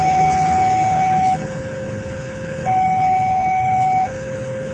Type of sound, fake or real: fake